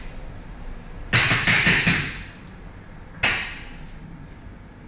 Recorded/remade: recorded